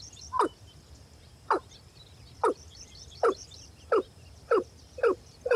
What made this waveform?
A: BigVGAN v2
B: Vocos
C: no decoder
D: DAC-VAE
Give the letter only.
A